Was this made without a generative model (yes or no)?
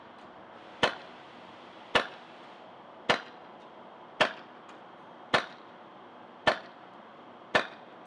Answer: yes